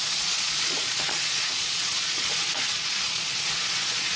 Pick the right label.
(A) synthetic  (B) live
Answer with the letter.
A